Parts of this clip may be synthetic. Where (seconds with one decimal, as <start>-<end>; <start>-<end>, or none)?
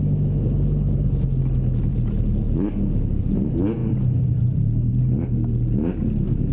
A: 1.9-3.2; 3.8-5.0